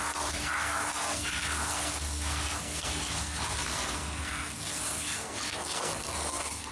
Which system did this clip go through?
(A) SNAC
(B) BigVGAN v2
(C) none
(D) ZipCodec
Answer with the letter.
A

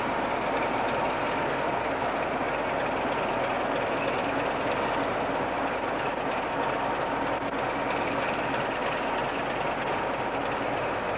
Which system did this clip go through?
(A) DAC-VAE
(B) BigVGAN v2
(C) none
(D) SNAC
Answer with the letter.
C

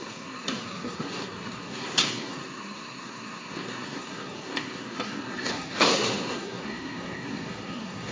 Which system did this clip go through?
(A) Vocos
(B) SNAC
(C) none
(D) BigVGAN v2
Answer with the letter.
B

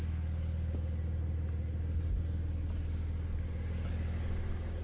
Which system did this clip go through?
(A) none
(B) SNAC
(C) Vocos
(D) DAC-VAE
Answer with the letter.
A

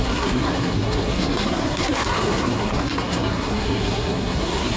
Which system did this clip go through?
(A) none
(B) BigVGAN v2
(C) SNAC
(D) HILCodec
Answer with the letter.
C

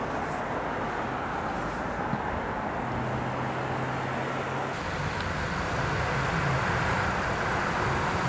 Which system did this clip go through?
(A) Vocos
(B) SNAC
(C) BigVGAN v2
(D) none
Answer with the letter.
D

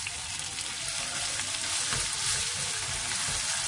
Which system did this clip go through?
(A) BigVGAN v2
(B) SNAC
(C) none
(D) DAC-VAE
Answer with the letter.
C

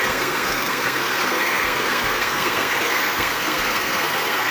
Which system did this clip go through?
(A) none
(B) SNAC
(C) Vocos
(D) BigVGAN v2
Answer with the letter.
B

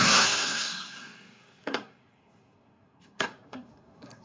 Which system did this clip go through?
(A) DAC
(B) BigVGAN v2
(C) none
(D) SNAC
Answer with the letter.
D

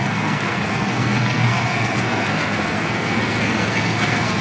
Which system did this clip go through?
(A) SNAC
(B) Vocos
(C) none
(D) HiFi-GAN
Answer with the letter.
A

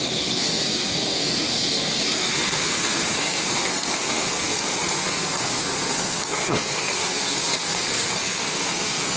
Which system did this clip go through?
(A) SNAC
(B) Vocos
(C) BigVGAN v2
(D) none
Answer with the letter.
A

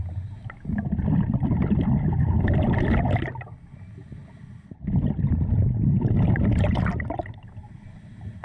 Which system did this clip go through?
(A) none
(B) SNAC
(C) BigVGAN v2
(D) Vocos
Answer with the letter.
A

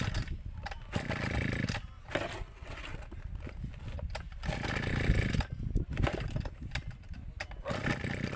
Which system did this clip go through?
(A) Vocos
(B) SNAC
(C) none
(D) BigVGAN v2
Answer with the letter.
C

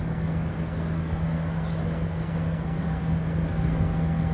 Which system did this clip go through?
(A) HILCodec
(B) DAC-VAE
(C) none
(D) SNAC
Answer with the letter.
D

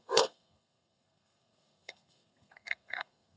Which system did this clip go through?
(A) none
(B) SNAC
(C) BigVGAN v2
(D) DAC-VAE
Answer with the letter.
B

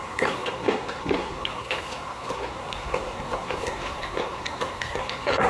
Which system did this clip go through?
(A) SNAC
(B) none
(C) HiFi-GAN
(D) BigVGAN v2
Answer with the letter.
A